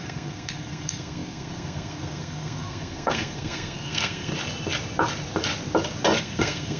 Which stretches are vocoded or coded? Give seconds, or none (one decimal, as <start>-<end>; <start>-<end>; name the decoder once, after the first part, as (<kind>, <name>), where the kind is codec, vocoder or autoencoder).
0.0-4.3 (codec, SNAC); 6.2-6.8